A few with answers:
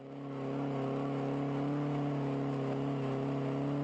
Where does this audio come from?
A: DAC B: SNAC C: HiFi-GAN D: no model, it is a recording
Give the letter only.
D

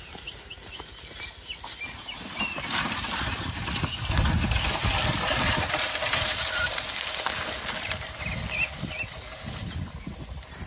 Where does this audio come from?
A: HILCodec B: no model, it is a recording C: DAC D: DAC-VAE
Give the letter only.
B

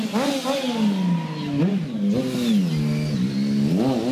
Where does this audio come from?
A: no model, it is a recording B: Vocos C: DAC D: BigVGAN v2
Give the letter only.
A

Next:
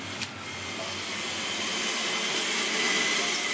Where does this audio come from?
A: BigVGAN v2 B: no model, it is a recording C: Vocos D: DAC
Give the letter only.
B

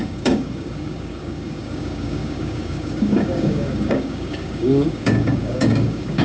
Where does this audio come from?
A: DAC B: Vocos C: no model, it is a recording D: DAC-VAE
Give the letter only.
A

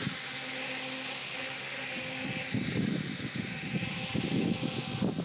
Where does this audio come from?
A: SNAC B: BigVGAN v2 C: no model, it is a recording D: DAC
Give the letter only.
C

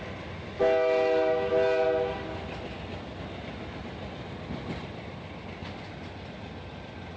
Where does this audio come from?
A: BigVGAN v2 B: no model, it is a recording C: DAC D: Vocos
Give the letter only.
B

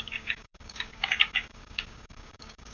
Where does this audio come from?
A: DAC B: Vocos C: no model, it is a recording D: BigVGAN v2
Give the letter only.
A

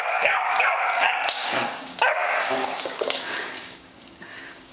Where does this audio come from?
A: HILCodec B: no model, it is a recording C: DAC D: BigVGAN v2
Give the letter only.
C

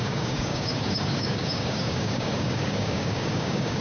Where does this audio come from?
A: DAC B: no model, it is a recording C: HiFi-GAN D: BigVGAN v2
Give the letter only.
A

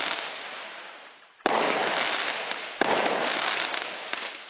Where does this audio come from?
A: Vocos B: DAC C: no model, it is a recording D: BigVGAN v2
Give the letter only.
C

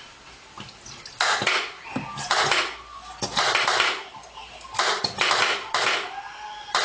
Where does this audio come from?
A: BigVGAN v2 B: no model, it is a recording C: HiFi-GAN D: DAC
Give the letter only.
B